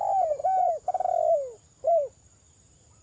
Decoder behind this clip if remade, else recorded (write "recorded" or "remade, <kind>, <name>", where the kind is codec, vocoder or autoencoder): recorded